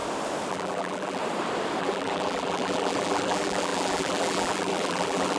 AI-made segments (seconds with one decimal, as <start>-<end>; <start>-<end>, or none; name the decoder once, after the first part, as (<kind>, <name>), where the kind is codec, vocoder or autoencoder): 0.5-1.2 (vocoder, BigVGAN v2); 1.8-5.4